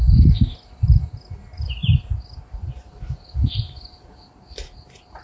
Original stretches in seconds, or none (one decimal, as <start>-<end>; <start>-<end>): 0.0-5.2

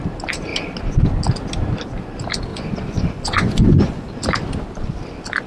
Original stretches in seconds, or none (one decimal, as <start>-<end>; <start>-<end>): 0.0-2.5; 4.1-5.5

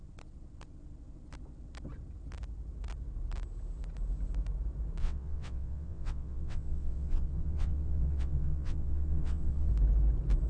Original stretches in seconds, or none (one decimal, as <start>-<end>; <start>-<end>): 0.0-5.0; 9.7-10.5

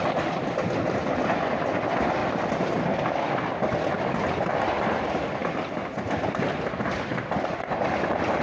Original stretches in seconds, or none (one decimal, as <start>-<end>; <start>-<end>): 0.0-8.4

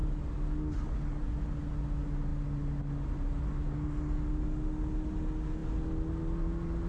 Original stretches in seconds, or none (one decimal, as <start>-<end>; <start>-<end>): 0.0-6.9

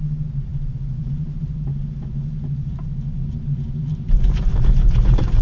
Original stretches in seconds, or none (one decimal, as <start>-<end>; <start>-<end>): none

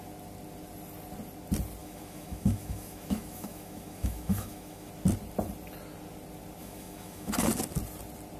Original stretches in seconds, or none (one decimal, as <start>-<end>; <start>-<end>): 0.0-1.8; 4.9-6.6; 7.3-8.4

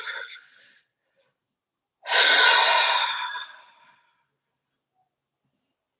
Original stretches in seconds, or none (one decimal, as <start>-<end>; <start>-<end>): 0.0-6.0